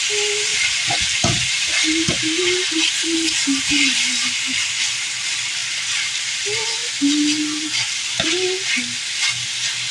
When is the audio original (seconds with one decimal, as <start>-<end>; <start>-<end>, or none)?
0.0-0.5; 5.0-5.6; 6.1-9.9